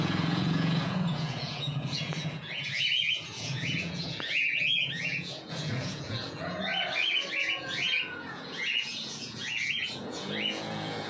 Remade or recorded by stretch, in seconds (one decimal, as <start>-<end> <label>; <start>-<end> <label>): 0.0-6.7 remade; 6.7-7.4 recorded; 7.4-11.1 remade